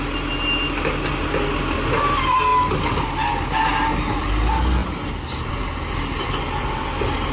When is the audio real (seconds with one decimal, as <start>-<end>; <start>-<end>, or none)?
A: 0.0-7.3

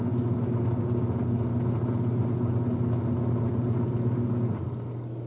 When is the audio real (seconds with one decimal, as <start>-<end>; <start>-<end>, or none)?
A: 0.0-5.3